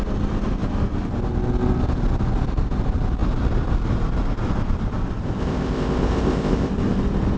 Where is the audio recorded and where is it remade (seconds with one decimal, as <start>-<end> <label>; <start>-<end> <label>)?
0.0-5.4 recorded; 5.4-6.7 remade; 6.7-7.4 recorded